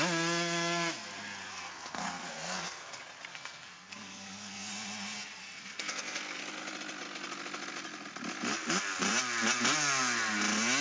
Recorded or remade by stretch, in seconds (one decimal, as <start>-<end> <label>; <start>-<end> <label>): 0.0-1.5 recorded; 1.5-2.9 remade; 2.9-3.3 recorded; 3.3-4.7 remade; 4.7-5.4 recorded; 5.4-6.4 remade; 6.4-10.8 recorded